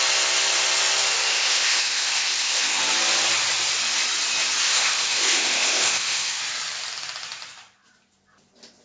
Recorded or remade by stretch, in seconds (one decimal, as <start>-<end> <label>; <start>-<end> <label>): 0.0-1.3 recorded; 1.3-2.8 remade; 2.8-4.6 recorded; 4.6-6.4 remade; 6.4-8.8 recorded